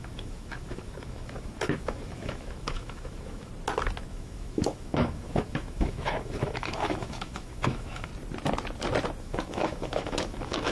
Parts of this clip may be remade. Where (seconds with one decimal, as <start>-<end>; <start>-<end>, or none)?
0.0-3.5; 4.1-8.1; 9.2-10.7